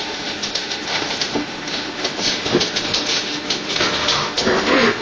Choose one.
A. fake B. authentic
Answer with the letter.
A